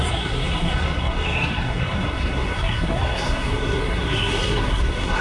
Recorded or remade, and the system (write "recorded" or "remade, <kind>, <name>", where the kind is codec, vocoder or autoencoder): remade, codec, SNAC